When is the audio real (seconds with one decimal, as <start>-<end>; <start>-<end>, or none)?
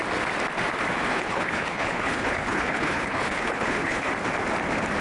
0.0-1.1; 4.1-5.0